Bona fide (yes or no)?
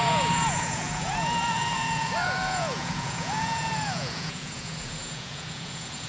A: no